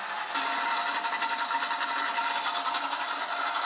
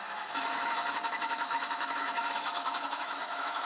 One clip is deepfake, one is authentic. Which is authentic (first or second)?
first